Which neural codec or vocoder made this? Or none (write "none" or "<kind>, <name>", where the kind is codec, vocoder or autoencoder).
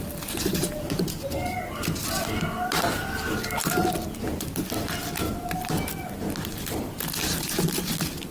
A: none